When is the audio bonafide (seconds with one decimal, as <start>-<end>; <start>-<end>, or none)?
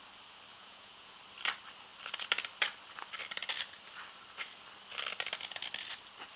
0.0-0.5; 1.2-6.4